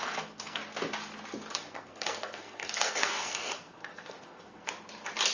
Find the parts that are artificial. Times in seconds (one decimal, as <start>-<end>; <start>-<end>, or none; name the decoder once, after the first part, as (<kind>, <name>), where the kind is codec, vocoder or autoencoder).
0.0-0.6 (codec, SNAC); 1.5-4.7